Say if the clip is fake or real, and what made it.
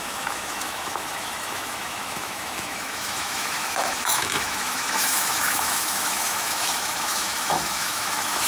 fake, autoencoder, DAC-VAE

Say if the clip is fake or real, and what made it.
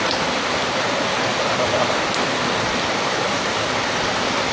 real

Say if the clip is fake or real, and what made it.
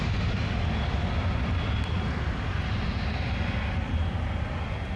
real